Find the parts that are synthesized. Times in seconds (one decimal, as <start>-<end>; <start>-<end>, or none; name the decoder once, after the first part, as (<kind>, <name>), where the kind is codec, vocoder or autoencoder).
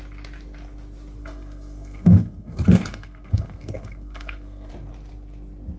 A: 1.2-4.7 (codec, SNAC)